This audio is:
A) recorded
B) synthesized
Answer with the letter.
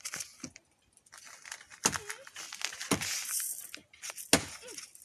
A